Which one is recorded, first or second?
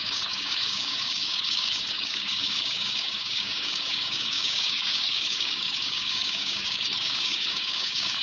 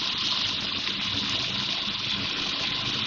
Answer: second